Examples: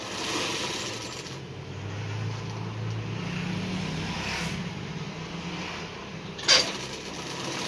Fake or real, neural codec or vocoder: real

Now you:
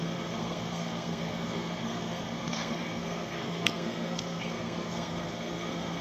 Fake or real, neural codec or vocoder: fake, codec, SNAC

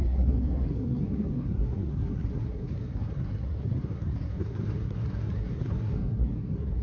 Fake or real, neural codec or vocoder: fake, codec, SNAC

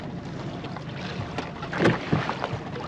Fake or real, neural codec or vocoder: real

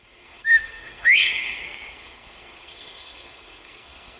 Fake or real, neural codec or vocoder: fake, codec, SNAC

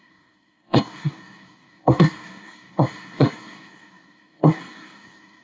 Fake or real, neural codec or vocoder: fake, codec, SNAC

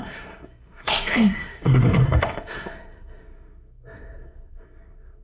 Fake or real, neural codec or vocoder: fake, codec, SNAC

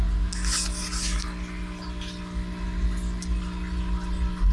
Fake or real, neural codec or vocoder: real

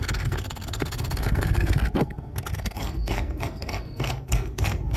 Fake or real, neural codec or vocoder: fake, codec, SNAC